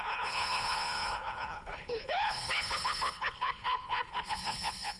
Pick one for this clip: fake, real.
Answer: fake